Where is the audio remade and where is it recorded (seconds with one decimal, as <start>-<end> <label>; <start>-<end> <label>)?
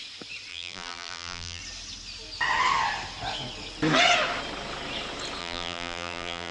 0.0-0.5 recorded; 0.5-1.6 remade; 1.6-5.4 recorded; 5.4-6.5 remade